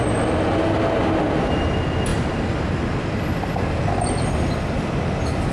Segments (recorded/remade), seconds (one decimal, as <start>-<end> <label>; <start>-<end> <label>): 0.0-5.5 recorded